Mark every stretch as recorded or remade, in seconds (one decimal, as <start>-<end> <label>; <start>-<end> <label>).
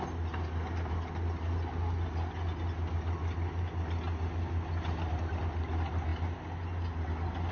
0.0-7.5 recorded